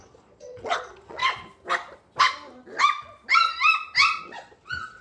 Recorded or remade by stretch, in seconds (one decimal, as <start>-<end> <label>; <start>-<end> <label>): 0.0-1.2 remade; 1.2-4.2 recorded; 4.2-5.0 remade